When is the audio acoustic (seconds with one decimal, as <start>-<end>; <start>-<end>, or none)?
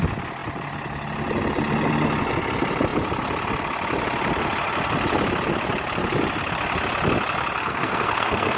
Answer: 0.0-7.6